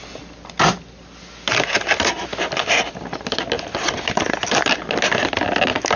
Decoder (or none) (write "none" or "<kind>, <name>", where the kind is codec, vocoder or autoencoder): none